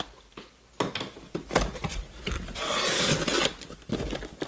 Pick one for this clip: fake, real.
fake